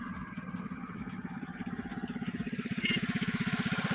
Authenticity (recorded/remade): recorded